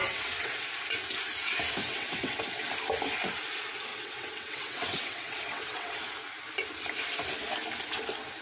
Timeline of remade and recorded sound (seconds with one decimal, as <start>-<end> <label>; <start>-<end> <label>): 0.0-0.7 remade; 0.7-1.8 recorded; 1.8-2.4 remade; 2.4-3.9 recorded; 3.9-6.0 remade; 6.0-8.4 recorded